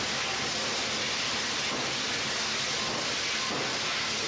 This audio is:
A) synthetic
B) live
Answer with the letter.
B